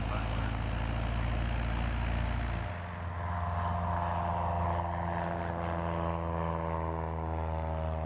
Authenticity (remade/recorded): recorded